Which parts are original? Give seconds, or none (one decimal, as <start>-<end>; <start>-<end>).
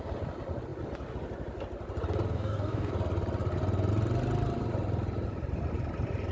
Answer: 0.0-2.3; 2.9-6.3